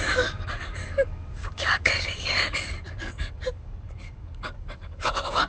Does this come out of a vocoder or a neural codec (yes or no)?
yes